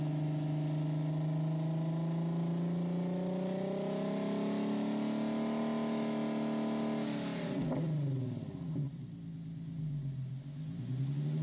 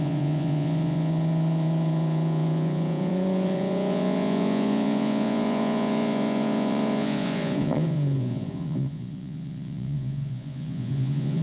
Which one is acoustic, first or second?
first